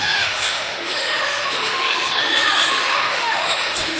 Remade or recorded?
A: remade